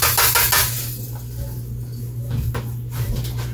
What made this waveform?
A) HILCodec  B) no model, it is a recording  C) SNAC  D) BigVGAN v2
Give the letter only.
B